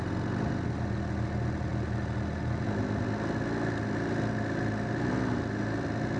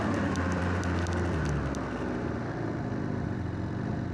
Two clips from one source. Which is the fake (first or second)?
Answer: second